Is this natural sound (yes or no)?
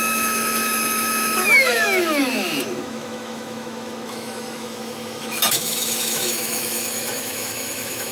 no